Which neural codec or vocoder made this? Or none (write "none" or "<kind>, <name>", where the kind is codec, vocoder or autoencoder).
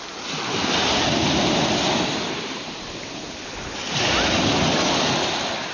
none